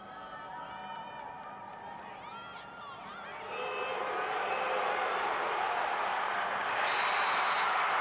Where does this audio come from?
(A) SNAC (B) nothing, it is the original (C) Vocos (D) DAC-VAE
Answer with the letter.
B